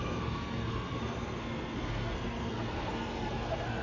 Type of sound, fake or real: fake